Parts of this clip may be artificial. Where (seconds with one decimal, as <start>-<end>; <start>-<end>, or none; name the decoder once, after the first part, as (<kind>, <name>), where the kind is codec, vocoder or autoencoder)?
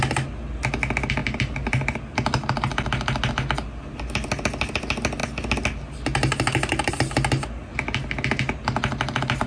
none